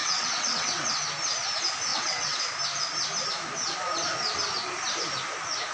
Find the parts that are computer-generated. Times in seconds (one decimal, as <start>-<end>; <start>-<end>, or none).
0.0-0.9; 1.9-2.4